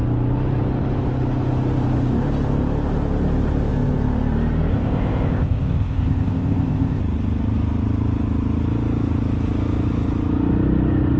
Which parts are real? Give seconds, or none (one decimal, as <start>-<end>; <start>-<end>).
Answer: 0.0-4.7; 7.0-11.2